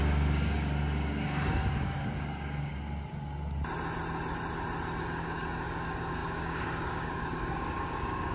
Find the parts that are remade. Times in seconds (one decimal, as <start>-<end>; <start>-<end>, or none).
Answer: 0.0-2.7; 5.0-8.3